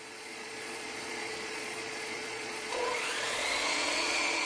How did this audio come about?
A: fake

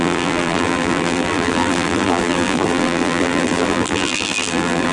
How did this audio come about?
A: fake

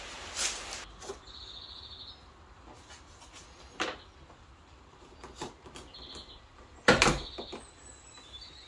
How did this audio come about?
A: real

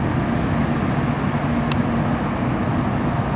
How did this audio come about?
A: real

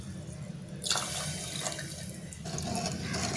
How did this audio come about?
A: real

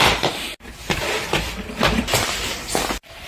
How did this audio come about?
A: fake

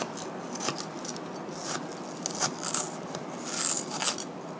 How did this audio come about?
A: real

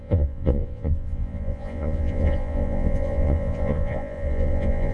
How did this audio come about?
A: fake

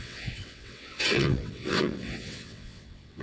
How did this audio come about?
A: fake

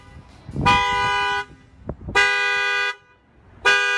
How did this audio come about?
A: real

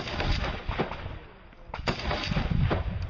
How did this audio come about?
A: real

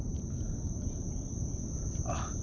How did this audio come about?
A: real